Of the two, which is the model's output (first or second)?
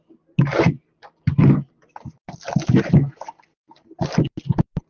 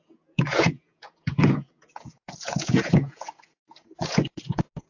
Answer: second